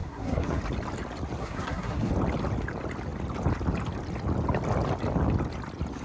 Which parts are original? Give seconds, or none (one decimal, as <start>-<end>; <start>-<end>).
0.6-1.4; 2.1-6.0